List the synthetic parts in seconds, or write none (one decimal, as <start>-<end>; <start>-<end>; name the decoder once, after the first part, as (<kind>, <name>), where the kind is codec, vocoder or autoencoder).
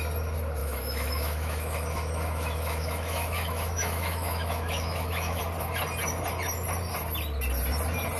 0.6-5.4 (autoencoder, DAC-VAE)